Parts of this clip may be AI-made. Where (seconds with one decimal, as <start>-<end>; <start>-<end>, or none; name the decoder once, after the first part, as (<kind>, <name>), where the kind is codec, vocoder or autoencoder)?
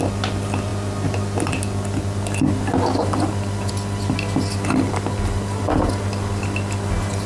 none